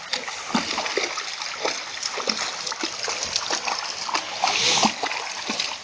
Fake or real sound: real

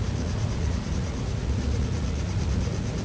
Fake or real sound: fake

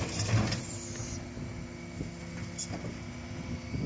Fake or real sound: real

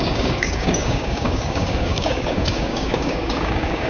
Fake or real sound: fake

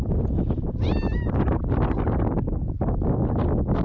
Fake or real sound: real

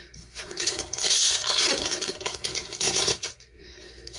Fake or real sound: fake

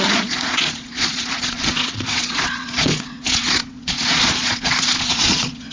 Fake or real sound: fake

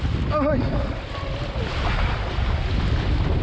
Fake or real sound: real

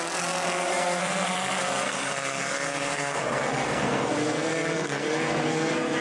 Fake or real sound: fake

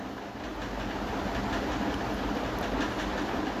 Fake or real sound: real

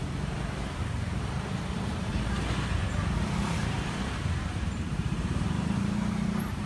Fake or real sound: fake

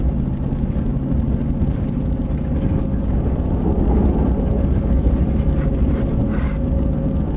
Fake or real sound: real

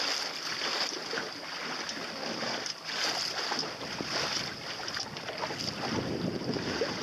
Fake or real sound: real